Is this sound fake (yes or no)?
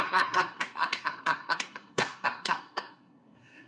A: yes